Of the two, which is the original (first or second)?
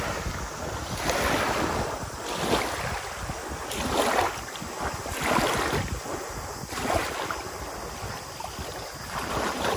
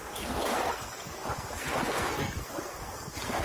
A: first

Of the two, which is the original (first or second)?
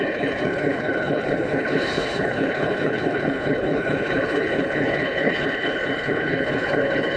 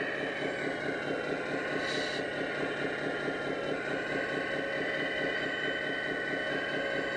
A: second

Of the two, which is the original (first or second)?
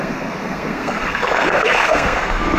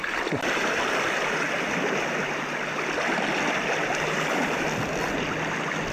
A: second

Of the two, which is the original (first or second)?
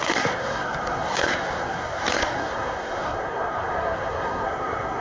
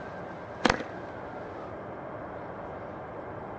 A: second